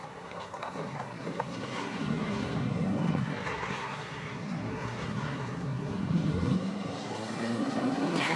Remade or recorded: remade